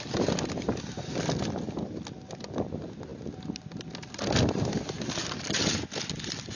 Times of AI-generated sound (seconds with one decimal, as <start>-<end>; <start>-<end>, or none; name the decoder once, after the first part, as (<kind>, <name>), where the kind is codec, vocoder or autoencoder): none